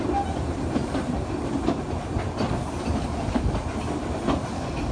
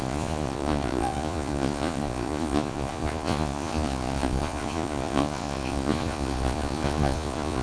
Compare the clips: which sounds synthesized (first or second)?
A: second